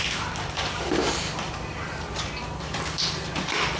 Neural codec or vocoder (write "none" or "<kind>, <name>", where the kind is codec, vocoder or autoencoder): vocoder, BigVGAN v2